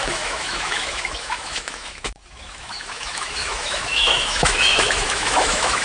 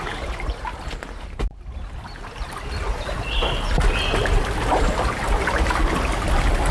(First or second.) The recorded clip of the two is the second